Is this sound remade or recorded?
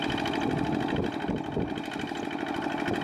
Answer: recorded